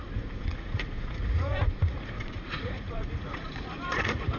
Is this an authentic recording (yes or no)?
no